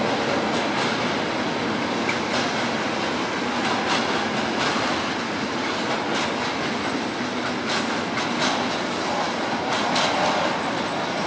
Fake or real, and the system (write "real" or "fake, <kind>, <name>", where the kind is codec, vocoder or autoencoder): real